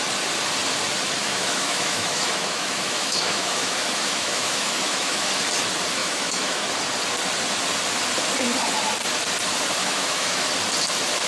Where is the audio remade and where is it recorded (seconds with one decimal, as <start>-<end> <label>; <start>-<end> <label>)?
0.0-1.2 recorded; 1.2-5.3 remade; 5.3-6.0 recorded; 6.0-6.7 remade; 6.7-9.8 recorded; 9.8-10.5 remade; 10.5-11.3 recorded

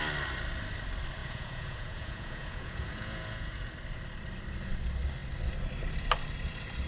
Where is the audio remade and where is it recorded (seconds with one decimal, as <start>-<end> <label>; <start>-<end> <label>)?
0.0-1.2 recorded; 1.2-3.7 remade; 3.7-6.9 recorded

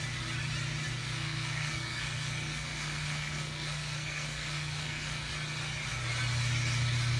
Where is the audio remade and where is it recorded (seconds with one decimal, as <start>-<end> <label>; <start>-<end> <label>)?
0.0-1.0 recorded; 1.0-5.3 remade; 5.3-7.2 recorded

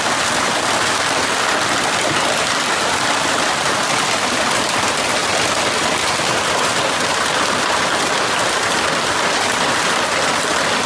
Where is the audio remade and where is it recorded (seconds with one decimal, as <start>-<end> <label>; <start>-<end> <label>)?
0.0-10.9 recorded

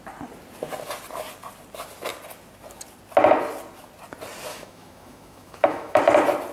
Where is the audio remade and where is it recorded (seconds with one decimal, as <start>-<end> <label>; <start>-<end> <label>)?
0.0-4.5 recorded; 4.5-6.0 remade; 6.0-6.5 recorded